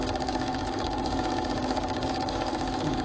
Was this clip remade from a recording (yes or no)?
yes